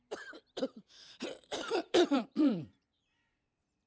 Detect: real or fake fake